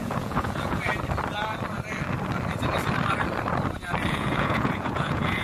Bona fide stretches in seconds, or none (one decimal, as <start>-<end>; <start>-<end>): 0.9-4.1